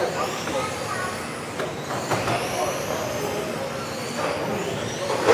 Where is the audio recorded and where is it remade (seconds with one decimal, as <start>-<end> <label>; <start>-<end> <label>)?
0.0-1.9 recorded; 1.9-3.1 remade; 3.1-5.3 recorded